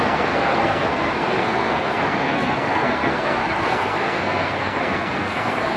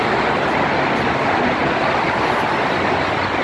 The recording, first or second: second